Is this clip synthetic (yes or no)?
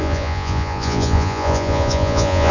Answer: yes